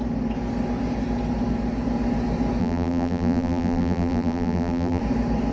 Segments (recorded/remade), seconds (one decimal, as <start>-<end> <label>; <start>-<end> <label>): 0.0-2.6 recorded; 2.6-5.0 remade; 5.0-5.5 recorded